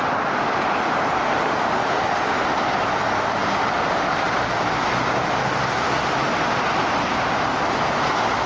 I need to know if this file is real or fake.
real